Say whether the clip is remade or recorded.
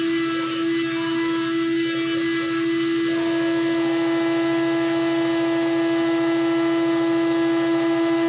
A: recorded